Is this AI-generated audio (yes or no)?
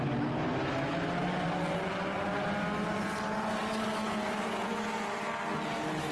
no